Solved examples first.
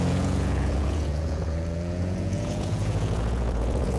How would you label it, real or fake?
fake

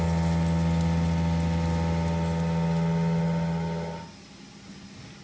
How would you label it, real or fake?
real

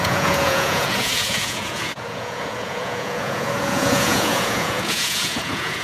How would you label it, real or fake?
fake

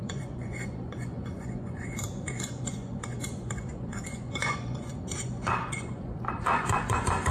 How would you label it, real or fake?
fake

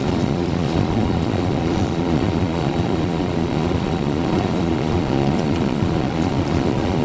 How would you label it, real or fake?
fake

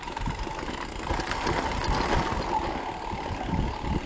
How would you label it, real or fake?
real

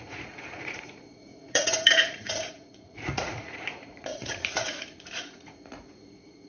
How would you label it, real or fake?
fake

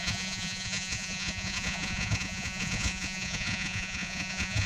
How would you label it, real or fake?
fake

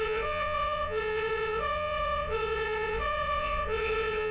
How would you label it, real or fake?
fake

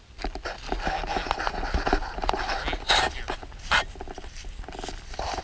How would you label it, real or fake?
real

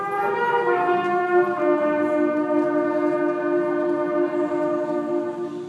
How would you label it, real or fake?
real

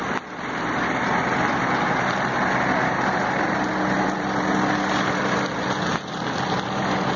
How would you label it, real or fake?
real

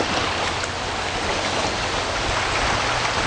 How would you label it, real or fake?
real